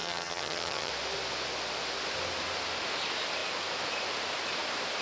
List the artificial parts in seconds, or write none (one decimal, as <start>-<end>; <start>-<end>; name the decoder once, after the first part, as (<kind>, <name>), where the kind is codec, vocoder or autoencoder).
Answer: 0.0-0.9 (vocoder, HiFi-GAN)